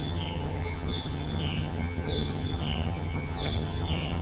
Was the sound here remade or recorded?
remade